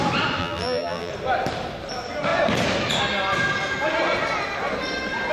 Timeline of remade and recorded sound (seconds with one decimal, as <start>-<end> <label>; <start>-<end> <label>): 0.0-0.4 recorded; 0.4-1.1 remade; 1.1-5.3 recorded